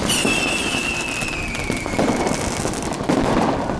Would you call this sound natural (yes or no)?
no